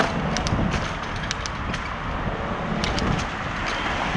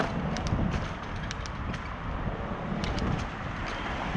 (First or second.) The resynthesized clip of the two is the second